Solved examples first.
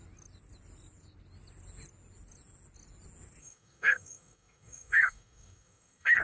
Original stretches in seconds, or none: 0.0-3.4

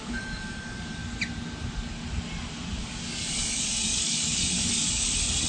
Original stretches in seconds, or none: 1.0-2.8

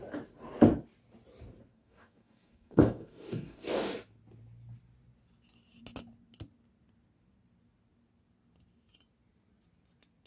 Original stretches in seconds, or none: 0.0-1.7; 3.9-10.3

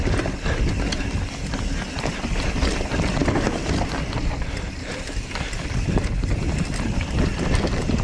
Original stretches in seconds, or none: 0.0-8.0

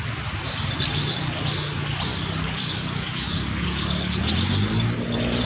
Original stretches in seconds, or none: 0.0-2.1; 4.2-5.4

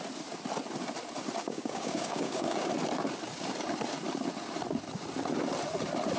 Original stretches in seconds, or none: 0.0-1.4; 2.7-6.2

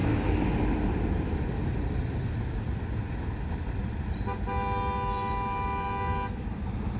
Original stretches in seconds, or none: 0.0-7.0

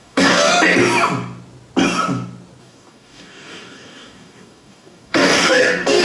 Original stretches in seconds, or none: 0.5-2.6